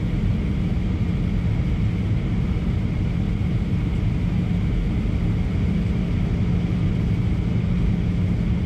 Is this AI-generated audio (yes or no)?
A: no